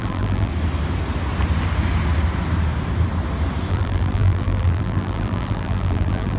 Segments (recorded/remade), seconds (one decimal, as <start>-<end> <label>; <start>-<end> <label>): 0.0-0.5 remade; 0.5-3.7 recorded; 3.7-6.4 remade